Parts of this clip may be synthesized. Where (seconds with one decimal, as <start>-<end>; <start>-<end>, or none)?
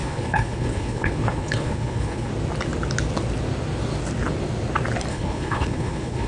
0.0-2.3; 5.1-6.3